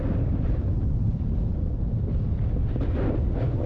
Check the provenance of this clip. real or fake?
real